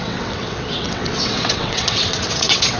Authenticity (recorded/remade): remade